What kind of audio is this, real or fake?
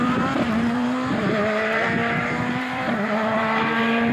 fake